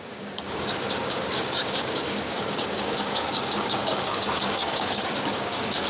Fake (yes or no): yes